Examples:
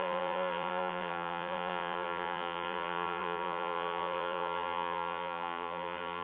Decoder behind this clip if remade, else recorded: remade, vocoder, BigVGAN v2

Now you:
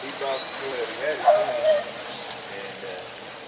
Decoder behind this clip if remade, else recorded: remade, vocoder, BigVGAN v2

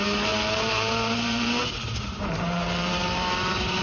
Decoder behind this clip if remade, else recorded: remade, vocoder, BigVGAN v2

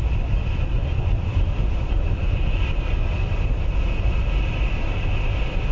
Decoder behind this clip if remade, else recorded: remade, vocoder, BigVGAN v2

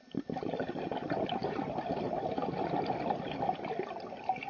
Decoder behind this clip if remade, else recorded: remade, vocoder, BigVGAN v2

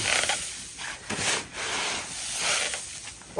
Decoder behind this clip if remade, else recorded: recorded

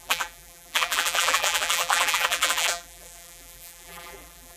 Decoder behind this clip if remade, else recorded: remade, vocoder, BigVGAN v2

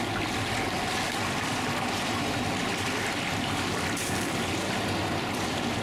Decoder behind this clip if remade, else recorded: recorded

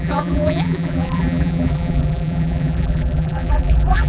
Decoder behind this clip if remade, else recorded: remade, vocoder, BigVGAN v2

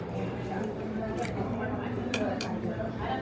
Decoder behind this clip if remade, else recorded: remade, vocoder, BigVGAN v2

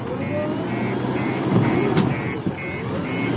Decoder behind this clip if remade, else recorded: recorded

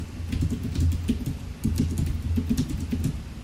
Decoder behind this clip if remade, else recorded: recorded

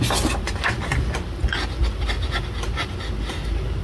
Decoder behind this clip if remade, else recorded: recorded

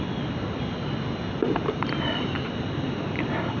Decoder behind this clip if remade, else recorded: remade, vocoder, BigVGAN v2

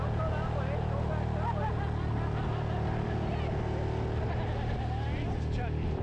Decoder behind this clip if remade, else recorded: recorded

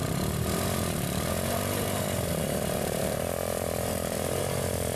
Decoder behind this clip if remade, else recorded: remade, vocoder, BigVGAN v2